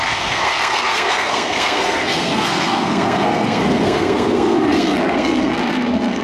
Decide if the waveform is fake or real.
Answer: fake